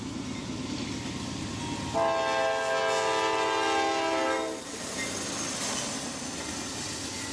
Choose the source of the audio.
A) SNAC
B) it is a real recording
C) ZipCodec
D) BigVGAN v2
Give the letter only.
B